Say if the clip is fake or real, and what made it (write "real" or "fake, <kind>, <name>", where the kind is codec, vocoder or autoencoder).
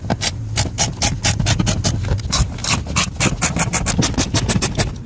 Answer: real